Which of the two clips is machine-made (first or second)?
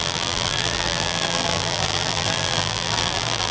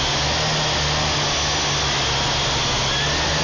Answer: first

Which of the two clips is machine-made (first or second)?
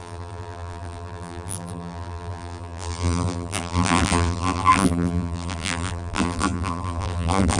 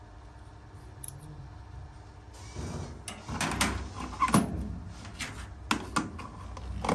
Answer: first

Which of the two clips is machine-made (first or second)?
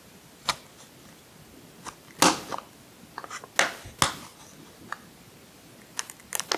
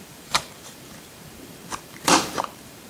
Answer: second